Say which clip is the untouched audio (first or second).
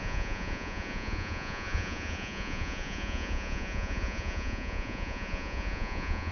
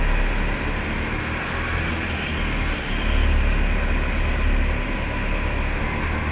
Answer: second